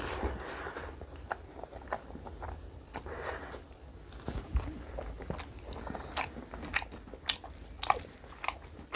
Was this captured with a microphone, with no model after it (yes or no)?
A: yes